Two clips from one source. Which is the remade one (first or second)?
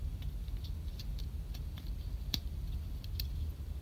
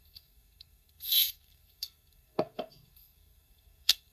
second